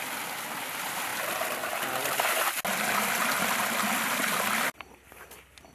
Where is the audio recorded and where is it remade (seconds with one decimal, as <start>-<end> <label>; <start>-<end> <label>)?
0.0-5.7 recorded